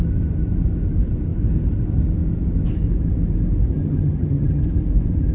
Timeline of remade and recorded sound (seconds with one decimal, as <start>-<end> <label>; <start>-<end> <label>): 0.0-3.7 recorded; 3.7-4.6 remade; 4.6-5.3 recorded